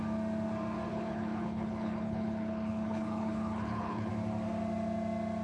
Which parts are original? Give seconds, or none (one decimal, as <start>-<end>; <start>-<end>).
0.0-0.9; 4.1-5.4